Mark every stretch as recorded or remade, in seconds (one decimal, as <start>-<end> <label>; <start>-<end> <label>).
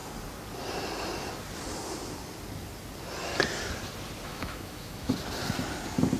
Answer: 0.0-4.3 recorded; 4.3-5.1 remade; 5.1-6.2 recorded